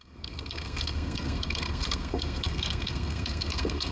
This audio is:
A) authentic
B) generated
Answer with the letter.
B